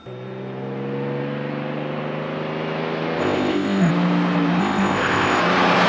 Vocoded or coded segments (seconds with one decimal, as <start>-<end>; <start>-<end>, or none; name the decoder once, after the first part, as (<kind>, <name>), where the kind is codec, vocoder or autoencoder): 3.2-3.9 (codec, ZipCodec); 4.6-5.4